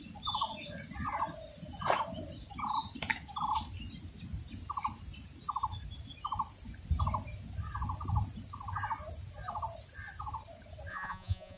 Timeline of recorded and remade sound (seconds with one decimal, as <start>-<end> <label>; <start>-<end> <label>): 0.0-10.9 recorded; 10.9-11.6 remade